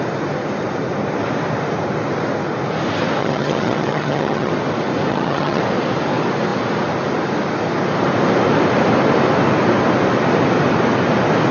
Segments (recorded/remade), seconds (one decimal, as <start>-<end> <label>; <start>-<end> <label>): 0.0-3.2 recorded; 3.2-4.5 remade; 4.5-5.1 recorded; 5.1-5.6 remade; 5.6-11.5 recorded